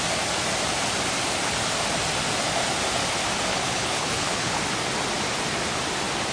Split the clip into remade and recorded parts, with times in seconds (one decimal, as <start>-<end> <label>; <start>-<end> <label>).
0.0-3.5 recorded; 3.5-4.6 remade; 4.6-6.3 recorded